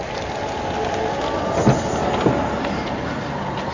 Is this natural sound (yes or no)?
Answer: yes